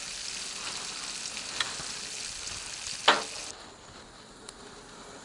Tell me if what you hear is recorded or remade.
recorded